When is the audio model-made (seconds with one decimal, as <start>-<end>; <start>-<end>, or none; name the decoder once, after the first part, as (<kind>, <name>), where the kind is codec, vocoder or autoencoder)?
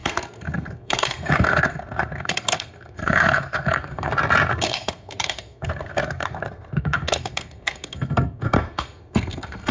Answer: 0.0-4.1 (codec, SNAC); 4.5-9.7